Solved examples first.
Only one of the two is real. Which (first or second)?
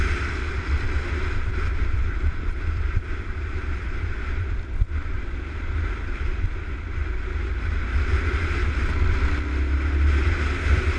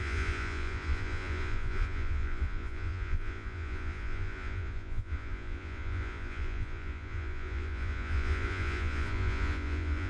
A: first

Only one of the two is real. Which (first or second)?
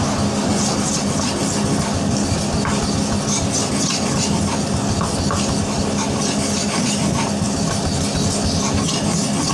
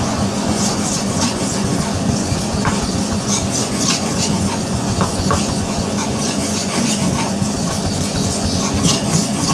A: first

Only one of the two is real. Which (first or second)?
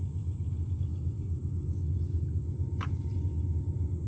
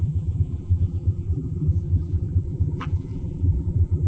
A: first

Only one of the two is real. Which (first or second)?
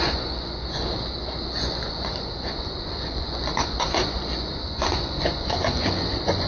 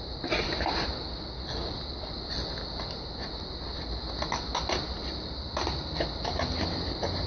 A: second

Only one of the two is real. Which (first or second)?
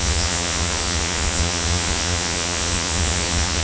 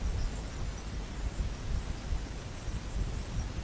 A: second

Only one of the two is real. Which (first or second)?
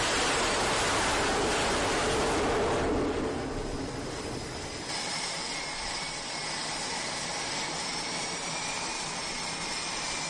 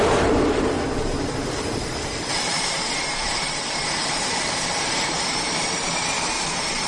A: first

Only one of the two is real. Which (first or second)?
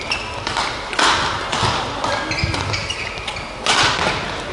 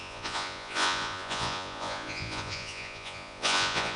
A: first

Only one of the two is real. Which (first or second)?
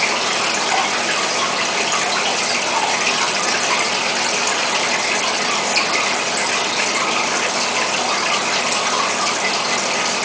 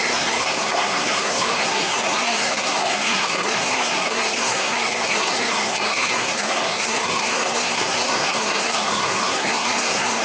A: first